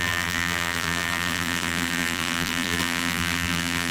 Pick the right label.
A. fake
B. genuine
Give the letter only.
A